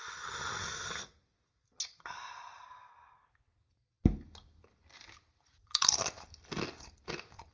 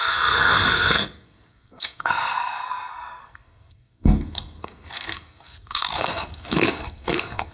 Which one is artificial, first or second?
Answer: second